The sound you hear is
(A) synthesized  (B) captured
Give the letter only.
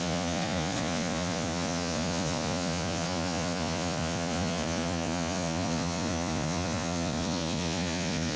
A